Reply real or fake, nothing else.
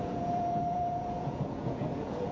fake